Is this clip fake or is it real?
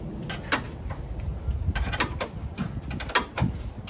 real